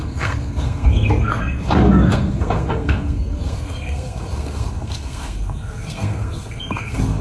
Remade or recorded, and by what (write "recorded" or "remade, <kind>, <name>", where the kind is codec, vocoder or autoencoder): remade, codec, SNAC